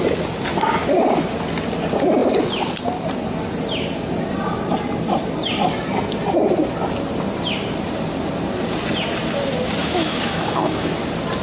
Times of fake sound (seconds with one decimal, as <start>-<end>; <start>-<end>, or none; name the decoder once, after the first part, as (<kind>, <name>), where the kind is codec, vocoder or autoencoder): 9.8-10.9 (autoencoder, DAC-VAE)